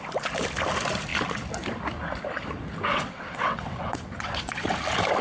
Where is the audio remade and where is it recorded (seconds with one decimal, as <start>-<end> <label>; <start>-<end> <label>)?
0.0-2.9 recorded; 2.9-4.7 remade; 4.7-5.2 recorded